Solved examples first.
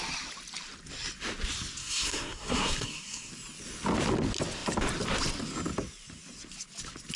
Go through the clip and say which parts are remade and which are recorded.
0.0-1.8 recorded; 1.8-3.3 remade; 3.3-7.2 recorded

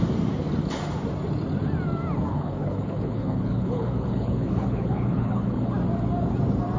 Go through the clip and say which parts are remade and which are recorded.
0.0-2.3 recorded; 2.3-5.7 remade; 5.7-6.8 recorded

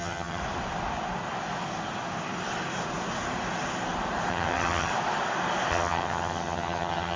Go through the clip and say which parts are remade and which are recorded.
0.0-0.4 remade; 0.4-4.3 recorded; 4.3-4.9 remade; 4.9-5.7 recorded; 5.7-7.2 remade

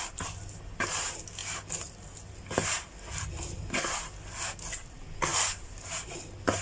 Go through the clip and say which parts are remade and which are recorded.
0.0-5.3 recorded; 5.3-6.1 remade; 6.1-6.6 recorded

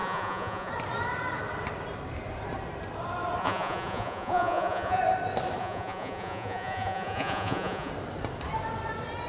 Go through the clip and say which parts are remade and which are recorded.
0.0-0.7 remade; 0.7-3.4 recorded; 3.4-5.0 remade; 5.0-5.6 recorded; 5.6-7.9 remade; 7.9-9.3 recorded

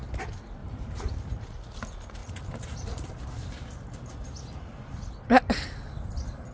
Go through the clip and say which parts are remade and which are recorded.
0.0-0.6 recorded; 0.6-1.1 remade; 1.1-2.2 recorded; 2.2-3.2 remade; 3.2-6.5 recorded

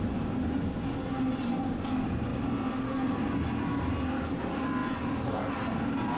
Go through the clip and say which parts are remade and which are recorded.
0.0-6.2 recorded